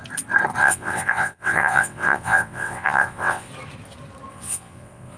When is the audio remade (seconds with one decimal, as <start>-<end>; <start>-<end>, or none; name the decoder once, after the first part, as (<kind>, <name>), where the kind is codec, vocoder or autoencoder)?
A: 0.6-3.5 (vocoder, WaveNeXt); 4.3-5.2